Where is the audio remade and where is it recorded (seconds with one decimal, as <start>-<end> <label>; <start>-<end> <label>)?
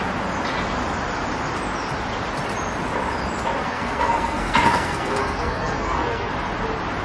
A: 0.0-3.6 recorded; 3.6-6.3 remade; 6.3-7.0 recorded